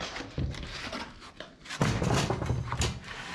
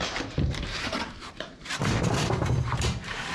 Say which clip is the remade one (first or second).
second